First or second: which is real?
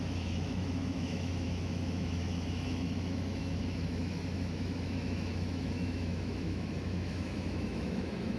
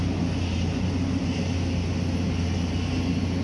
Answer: second